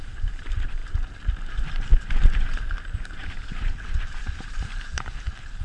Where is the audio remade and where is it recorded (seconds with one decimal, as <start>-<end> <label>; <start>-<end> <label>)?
0.0-0.8 remade; 0.8-1.4 recorded; 1.4-5.6 remade